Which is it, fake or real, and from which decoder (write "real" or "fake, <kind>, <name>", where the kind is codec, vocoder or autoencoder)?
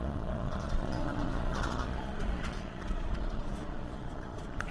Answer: fake, vocoder, Vocos